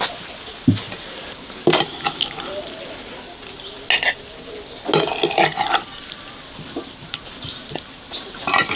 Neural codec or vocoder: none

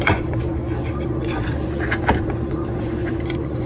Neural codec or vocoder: vocoder, Vocos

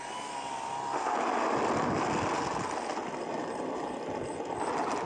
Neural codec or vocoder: none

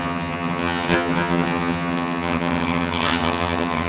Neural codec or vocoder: vocoder, HiFi-GAN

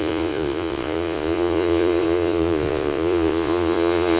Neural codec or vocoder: vocoder, Vocos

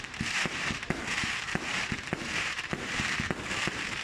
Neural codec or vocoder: vocoder, BigVGAN v2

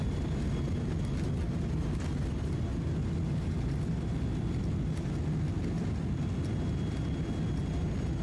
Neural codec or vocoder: none